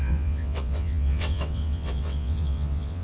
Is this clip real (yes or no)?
no